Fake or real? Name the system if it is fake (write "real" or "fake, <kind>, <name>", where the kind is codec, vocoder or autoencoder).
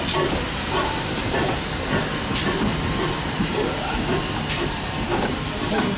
real